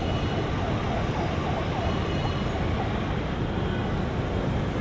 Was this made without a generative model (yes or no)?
yes